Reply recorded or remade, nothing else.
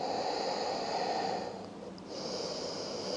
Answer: recorded